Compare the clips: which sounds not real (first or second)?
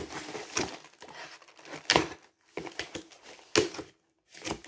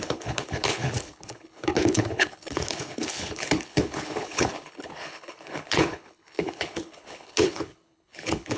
second